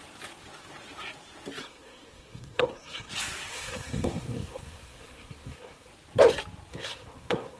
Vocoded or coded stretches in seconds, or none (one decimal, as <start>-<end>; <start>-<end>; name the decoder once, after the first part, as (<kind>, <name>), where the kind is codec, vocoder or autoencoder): 1.6-3.1 (codec, SNAC); 3.5-5.9; 6.7-7.6